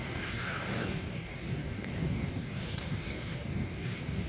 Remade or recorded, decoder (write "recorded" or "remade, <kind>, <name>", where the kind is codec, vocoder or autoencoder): remade, codec, DAC